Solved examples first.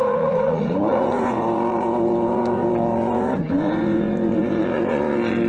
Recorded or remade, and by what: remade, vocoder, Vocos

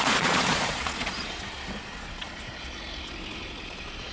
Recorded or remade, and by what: remade, vocoder, Vocos